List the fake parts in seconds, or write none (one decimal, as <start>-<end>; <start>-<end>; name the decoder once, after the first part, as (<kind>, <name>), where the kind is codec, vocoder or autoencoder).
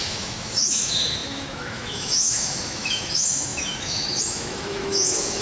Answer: 0.0-5.4 (autoencoder, DAC-VAE)